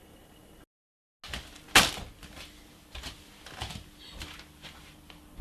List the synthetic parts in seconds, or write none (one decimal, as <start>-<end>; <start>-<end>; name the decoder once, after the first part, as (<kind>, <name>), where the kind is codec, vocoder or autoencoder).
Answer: none